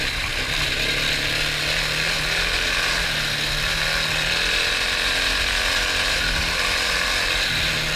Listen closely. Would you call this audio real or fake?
real